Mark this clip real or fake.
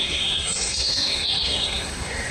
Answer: fake